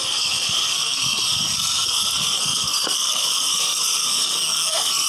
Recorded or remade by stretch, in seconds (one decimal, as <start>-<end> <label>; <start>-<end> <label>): 0.0-5.1 remade